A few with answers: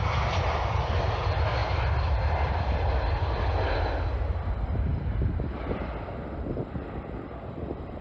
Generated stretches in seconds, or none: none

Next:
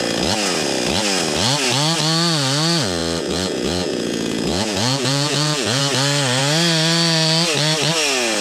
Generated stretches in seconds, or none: 3.0-5.8 (vocoder, Vocos)

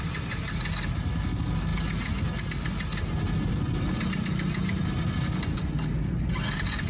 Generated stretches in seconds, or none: none

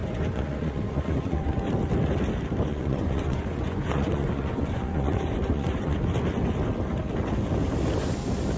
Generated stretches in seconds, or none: 0.0-1.7 (vocoder, Vocos); 2.7-6.0

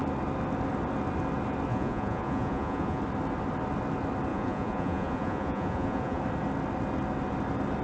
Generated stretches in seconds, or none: 1.7-3.0 (vocoder, Vocos); 4.3-6.2

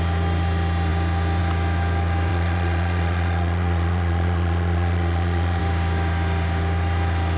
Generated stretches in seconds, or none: 2.3-5.6 (vocoder, Vocos)

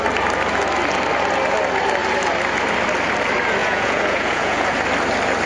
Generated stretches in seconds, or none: 3.6-4.7 (vocoder, Vocos)